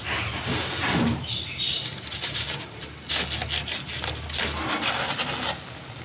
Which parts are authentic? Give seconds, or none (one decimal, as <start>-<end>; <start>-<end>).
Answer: 0.0-6.0